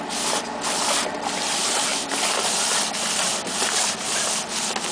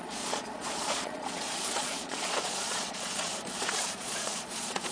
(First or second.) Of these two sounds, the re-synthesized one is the second